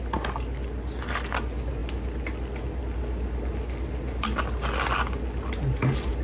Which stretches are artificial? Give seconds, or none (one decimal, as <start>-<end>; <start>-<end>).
none